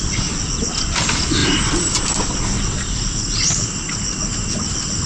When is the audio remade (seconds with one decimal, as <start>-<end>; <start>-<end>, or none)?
none

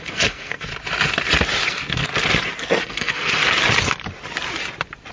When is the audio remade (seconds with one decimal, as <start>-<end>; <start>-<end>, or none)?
0.0-0.7; 1.7-2.1; 2.6-3.4

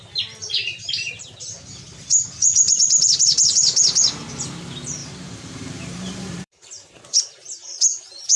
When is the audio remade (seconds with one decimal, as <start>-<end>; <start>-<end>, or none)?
0.4-1.1; 5.0-6.7

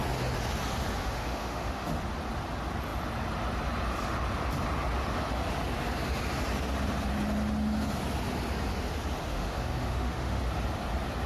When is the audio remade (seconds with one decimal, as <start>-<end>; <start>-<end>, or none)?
1.0-2.0; 9.3-10.4